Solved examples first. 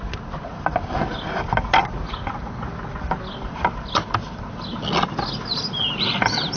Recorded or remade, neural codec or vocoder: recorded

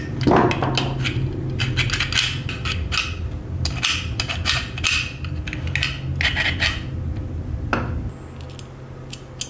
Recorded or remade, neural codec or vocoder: recorded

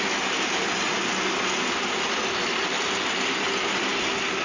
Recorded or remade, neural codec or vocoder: recorded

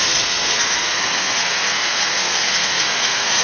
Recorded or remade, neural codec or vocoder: remade, codec, SNAC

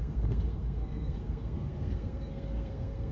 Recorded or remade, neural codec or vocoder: remade, codec, SNAC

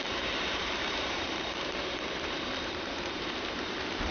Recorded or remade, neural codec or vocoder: remade, vocoder, BigVGAN v2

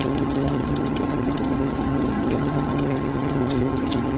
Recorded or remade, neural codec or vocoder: remade, vocoder, HiFi-GAN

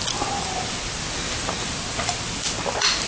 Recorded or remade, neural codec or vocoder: recorded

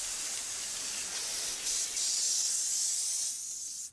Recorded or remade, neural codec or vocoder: recorded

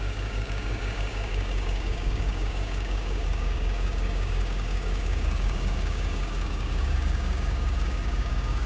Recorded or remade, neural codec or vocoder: remade, codec, DAC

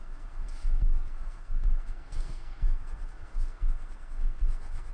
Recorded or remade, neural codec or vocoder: remade, codec, SNAC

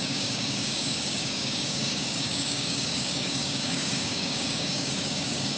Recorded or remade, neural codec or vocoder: remade, codec, DAC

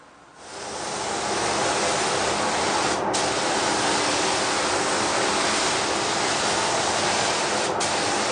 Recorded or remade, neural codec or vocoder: recorded